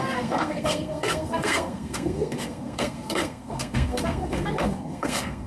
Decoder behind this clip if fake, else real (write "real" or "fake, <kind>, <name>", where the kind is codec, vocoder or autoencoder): fake, codec, SNAC